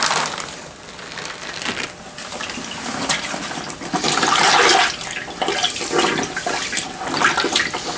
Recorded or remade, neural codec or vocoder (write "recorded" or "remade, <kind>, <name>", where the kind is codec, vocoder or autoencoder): recorded